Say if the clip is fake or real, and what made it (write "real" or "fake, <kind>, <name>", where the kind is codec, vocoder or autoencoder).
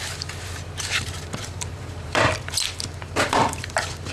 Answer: fake, vocoder, BigVGAN v2